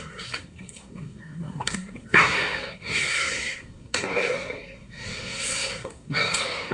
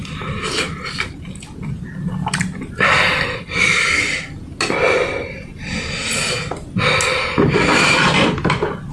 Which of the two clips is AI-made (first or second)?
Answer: first